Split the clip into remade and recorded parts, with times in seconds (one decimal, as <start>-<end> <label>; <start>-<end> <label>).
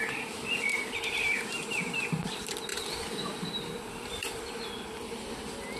0.0-0.7 recorded; 0.7-1.4 remade; 1.4-2.7 recorded; 2.7-4.4 remade; 4.4-5.8 recorded